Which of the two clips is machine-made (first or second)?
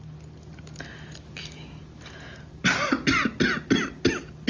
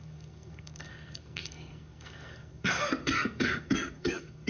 second